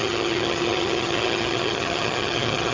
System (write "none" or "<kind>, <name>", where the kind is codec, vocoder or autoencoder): vocoder, HiFi-GAN